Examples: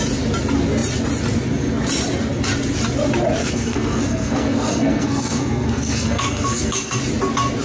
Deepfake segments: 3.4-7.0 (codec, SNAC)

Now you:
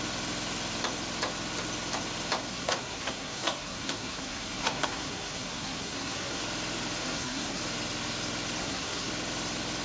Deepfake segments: 2.5-6.4 (codec, SNAC); 7.0-7.6; 8.6-9.1

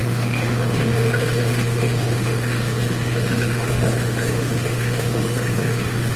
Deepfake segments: 0.0-6.2 (autoencoder, DAC-VAE)

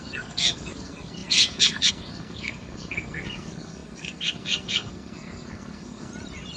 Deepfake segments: 0.0-6.1 (codec, SNAC)

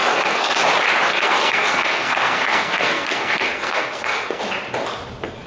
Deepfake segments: 0.0-0.6 (codec, SNAC); 1.1-4.4

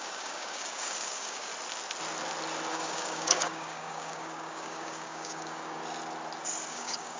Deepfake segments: 0.0-1.5 (codec, DAC); 2.7-5.8; 6.7-7.2

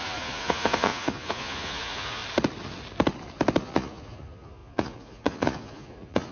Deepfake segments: 0.0-2.2 (vocoder, Vocos); 3.6-6.3

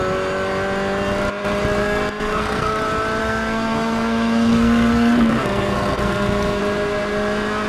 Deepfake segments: 1.8-2.8 (codec, SNAC); 3.2-6.6